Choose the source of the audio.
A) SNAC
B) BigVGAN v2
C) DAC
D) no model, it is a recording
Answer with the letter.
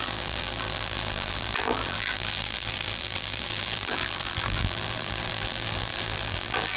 B